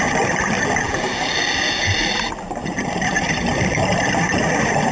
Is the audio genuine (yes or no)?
yes